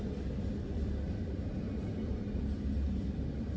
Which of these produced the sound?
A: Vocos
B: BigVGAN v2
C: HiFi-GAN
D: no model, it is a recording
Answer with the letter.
D